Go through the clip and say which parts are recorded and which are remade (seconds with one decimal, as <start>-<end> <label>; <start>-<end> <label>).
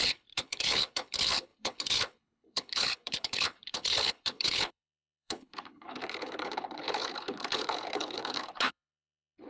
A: 0.0-9.5 remade